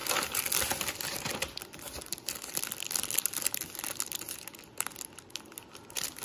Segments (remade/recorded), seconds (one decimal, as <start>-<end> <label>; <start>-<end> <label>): 0.0-6.2 recorded